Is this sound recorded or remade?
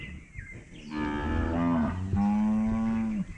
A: recorded